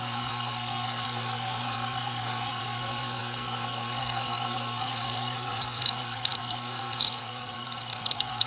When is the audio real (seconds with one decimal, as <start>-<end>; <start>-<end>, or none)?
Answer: none